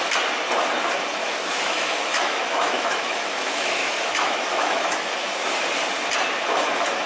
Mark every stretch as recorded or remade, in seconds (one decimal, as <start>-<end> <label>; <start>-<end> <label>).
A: 0.0-1.2 recorded; 1.2-5.5 remade; 5.5-7.1 recorded